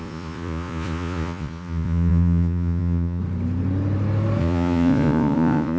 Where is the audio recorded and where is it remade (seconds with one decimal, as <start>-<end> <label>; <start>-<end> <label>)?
0.0-3.2 remade; 3.2-4.4 recorded; 4.4-5.8 remade